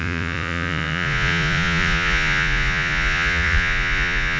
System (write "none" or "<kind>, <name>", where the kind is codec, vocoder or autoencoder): vocoder, Vocos